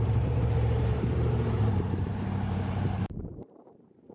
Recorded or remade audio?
remade